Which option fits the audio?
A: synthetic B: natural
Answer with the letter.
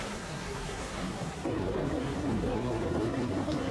A